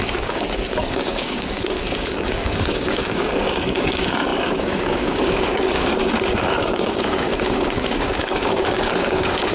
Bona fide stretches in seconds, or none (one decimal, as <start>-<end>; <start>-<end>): none